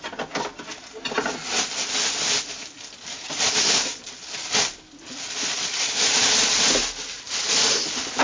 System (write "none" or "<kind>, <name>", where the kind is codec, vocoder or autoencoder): none